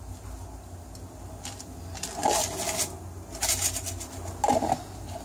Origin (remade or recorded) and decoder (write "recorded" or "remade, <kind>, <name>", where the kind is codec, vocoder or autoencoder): recorded